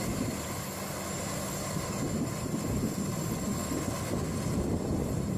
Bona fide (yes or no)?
yes